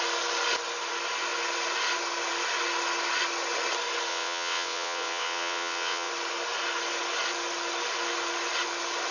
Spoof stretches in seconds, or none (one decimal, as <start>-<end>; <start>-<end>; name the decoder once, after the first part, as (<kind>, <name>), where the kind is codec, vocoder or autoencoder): 4.1-6.1 (vocoder, WaveNeXt)

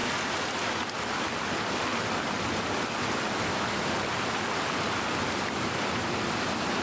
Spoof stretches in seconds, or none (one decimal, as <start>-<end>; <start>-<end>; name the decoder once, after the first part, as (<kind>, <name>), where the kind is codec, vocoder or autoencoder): none